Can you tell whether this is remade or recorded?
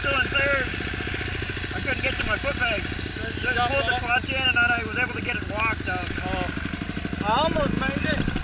recorded